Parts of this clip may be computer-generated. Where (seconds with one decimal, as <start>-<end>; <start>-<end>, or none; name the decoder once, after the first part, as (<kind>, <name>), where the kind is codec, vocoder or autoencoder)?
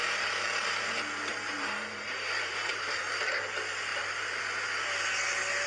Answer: 0.0-0.8 (vocoder, BigVGAN v2); 1.3-3.0; 3.9-4.4